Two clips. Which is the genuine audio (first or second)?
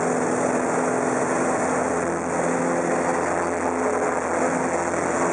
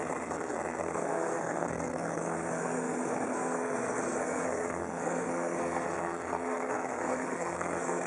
first